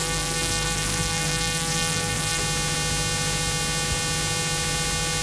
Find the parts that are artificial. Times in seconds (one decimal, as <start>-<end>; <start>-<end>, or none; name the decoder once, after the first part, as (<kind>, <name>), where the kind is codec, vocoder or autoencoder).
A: 0.0-2.4 (codec, SNAC)